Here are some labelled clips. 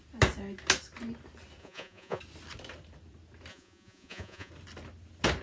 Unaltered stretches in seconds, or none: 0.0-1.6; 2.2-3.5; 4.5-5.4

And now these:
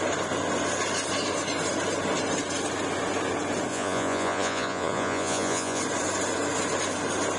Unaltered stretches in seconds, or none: 0.0-3.7; 5.8-7.4

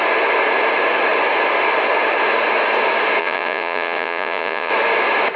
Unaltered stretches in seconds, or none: 0.0-3.2; 4.7-5.4

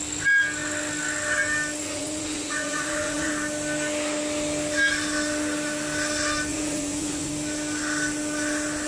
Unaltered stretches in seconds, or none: 0.0-1.8; 3.3-6.5; 7.3-8.9